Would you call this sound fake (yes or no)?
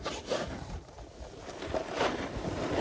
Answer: no